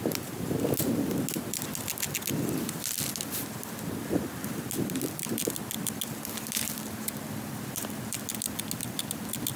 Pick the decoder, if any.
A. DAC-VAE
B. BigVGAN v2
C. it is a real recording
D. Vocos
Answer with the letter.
C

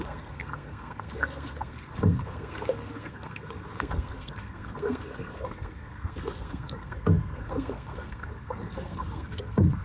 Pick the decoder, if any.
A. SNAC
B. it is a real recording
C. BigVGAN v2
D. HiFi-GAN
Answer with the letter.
A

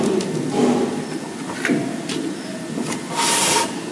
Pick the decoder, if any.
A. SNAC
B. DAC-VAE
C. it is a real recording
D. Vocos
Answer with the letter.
C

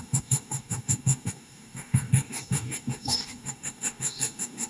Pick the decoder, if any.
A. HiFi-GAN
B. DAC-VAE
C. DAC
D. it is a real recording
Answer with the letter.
C